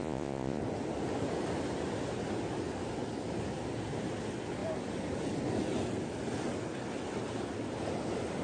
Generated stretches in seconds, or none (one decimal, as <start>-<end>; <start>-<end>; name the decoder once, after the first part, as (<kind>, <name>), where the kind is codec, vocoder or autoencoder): 0.0-0.6 (vocoder, Vocos)